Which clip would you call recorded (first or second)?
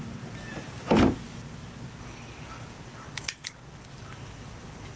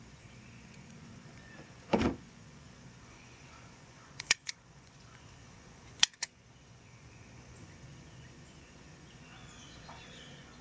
first